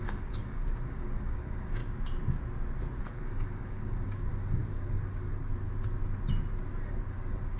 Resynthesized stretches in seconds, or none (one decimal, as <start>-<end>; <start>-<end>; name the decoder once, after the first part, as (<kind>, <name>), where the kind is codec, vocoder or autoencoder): 0.0-1.8 (codec, DAC); 3.0-5.5; 7.1-7.6